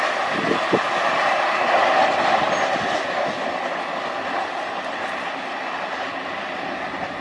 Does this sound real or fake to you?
real